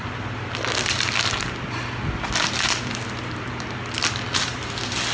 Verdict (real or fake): real